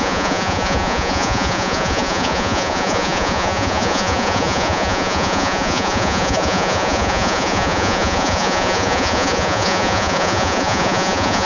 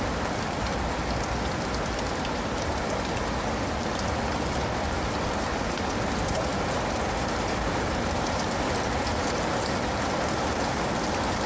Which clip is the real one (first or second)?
second